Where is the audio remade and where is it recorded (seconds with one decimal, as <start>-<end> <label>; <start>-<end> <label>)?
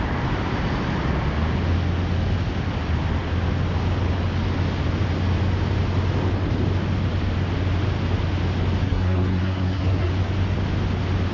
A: 0.0-8.8 recorded; 8.8-10.1 remade; 10.1-11.3 recorded